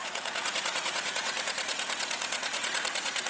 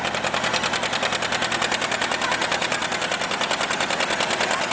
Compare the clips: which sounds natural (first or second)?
second